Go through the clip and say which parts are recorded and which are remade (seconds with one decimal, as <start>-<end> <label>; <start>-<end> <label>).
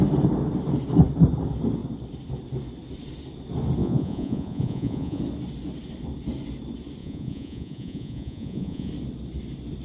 0.0-3.8 recorded; 3.8-5.2 remade; 5.2-7.0 recorded; 7.0-8.9 remade; 8.9-9.8 recorded